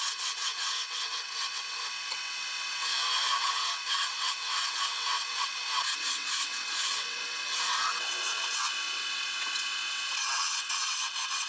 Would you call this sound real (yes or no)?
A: no